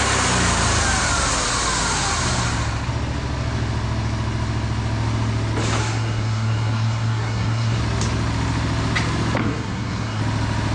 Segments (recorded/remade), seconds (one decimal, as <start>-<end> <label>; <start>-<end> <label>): 0.0-5.8 recorded; 5.8-7.8 remade; 7.8-9.4 recorded; 9.4-10.2 remade; 10.2-10.7 recorded